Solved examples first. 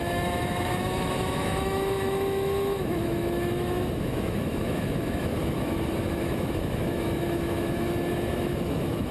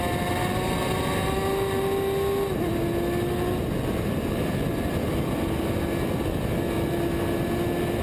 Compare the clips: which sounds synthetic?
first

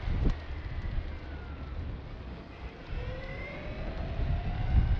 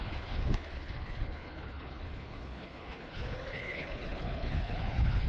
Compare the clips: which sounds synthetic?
second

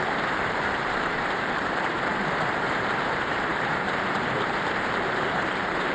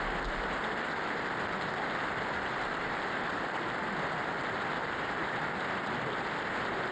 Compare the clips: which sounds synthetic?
first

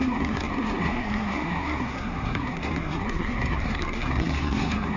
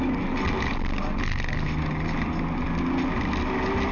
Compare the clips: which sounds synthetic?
first